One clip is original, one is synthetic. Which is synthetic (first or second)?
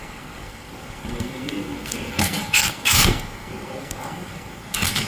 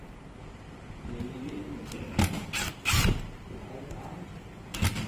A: first